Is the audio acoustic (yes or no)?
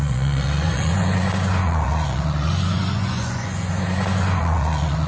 no